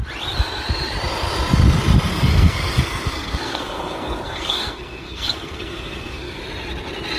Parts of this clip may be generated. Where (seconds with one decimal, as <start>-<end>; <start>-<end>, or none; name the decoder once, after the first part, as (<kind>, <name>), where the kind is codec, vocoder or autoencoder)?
2.1-6.4 (codec, SNAC)